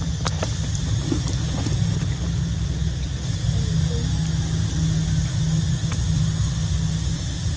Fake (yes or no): no